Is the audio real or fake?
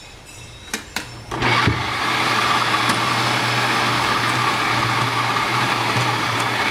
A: fake